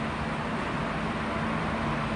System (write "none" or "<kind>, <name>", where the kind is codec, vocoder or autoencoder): none